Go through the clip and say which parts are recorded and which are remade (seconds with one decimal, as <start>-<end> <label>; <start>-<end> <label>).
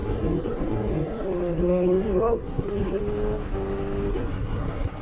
0.0-3.0 remade; 3.0-4.1 recorded; 4.1-5.0 remade